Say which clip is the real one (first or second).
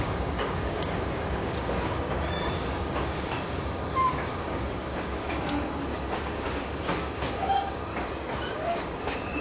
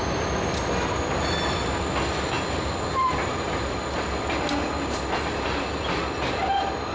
second